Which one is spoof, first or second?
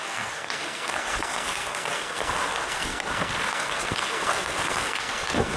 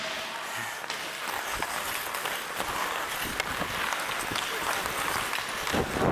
first